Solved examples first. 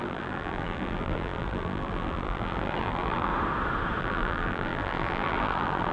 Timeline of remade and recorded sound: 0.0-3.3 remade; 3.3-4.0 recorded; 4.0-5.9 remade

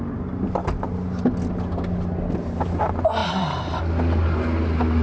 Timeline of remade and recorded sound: 0.0-3.2 recorded; 3.2-3.8 remade; 3.8-5.0 recorded